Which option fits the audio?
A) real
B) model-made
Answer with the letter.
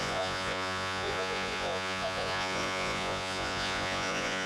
B